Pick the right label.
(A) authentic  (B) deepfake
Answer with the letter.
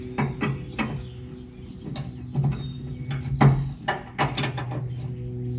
A